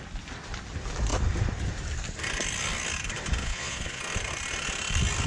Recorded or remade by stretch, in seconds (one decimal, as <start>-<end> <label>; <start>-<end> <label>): 0.0-3.4 recorded; 3.4-4.0 remade; 4.0-5.3 recorded